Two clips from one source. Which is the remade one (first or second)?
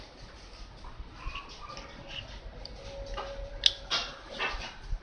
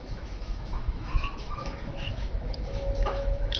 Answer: second